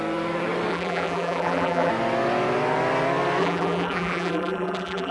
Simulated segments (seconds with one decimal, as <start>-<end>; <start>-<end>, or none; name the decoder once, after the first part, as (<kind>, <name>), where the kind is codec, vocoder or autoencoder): 0.7-1.9 (vocoder, BigVGAN v2); 3.4-5.1